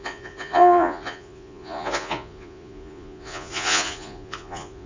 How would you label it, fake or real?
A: fake